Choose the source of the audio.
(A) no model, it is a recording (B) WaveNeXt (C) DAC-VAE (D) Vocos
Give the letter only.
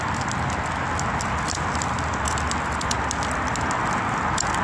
A